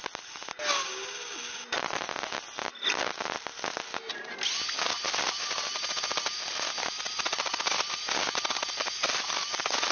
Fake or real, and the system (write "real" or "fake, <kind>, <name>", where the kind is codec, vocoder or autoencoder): real